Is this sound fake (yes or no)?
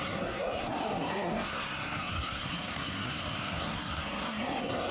yes